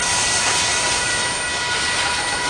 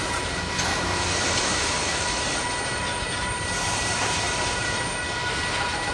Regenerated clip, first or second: second